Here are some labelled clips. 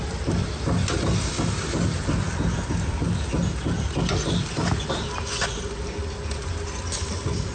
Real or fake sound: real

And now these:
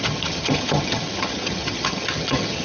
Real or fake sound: fake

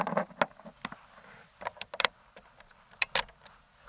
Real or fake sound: real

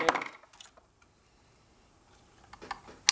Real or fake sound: real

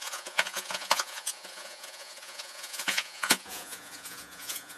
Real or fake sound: fake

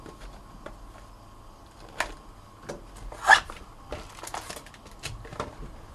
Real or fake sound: real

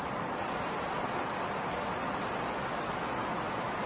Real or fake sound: real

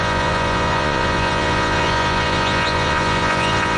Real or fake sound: fake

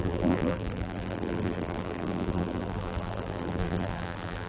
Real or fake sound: fake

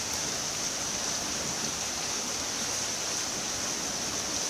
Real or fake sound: real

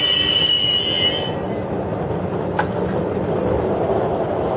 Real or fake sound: real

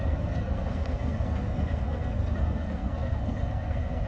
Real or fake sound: fake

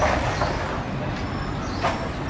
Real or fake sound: real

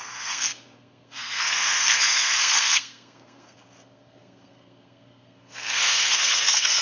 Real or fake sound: fake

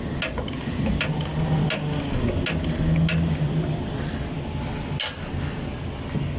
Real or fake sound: real